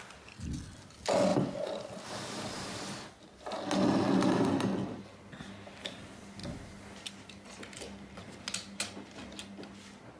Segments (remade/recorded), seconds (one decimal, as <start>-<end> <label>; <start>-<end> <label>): 0.0-10.2 recorded